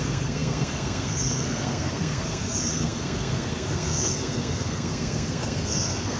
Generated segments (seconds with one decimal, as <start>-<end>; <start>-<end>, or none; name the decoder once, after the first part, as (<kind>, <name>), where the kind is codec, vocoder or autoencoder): 0.0-6.2 (codec, SNAC)